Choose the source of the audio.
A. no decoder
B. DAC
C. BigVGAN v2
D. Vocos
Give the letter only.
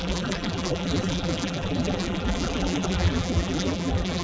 C